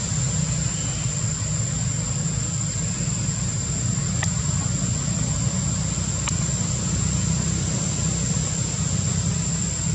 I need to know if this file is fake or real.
real